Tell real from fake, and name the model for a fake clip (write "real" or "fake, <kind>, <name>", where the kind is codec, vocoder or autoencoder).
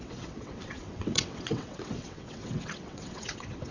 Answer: fake, vocoder, WaveNeXt